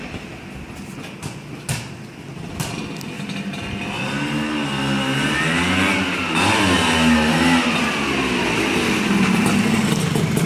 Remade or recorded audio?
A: recorded